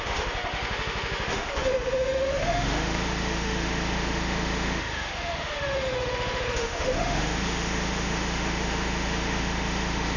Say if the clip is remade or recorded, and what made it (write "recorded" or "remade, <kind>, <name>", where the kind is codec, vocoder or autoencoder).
remade, autoencoder, DAC-VAE